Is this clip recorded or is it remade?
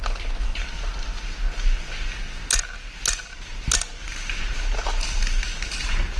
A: recorded